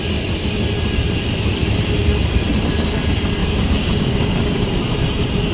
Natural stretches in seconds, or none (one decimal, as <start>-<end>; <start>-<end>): 0.0-3.4; 4.7-5.5